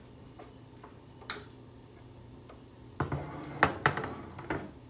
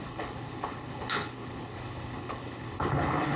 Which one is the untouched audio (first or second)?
first